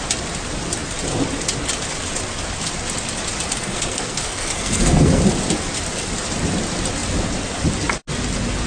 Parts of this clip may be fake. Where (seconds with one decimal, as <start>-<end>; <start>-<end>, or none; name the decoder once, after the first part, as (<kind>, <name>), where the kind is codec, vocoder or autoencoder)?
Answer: 3.6-5.2 (codec, SNAC)